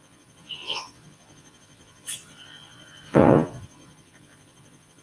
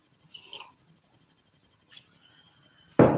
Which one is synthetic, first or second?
first